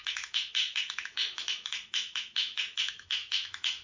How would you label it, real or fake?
fake